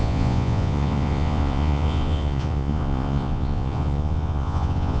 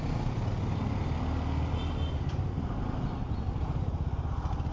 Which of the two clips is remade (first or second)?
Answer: first